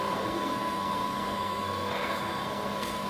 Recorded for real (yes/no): no